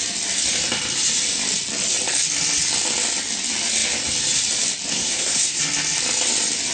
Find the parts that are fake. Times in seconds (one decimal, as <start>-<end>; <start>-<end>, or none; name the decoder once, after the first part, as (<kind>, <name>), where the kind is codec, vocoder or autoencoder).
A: 4.9-5.6 (codec, SNAC)